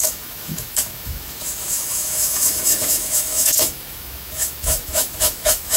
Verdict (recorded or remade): remade